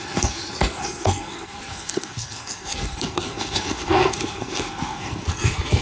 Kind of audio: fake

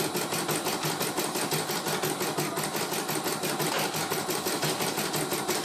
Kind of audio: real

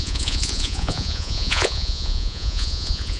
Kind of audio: fake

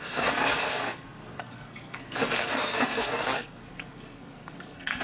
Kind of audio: fake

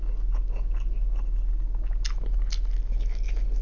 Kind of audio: real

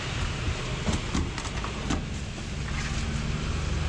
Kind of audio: real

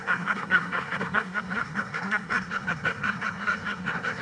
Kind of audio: fake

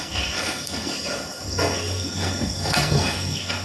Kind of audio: fake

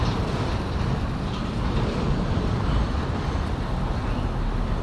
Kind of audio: real